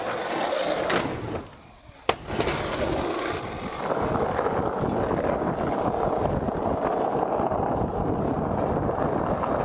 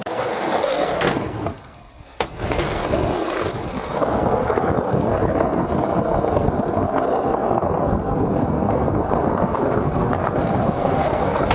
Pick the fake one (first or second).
second